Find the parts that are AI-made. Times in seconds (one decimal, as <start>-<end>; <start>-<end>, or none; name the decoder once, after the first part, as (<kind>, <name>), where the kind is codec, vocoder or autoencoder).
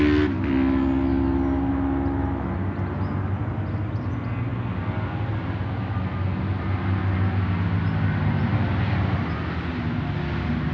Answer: none